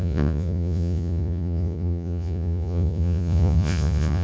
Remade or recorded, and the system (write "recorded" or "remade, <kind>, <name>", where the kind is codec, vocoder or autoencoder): remade, vocoder, Vocos